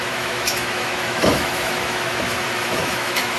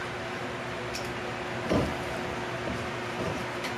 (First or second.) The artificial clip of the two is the first